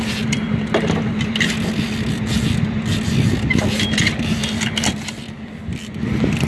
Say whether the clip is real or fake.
real